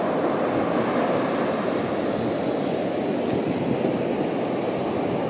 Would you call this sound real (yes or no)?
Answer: yes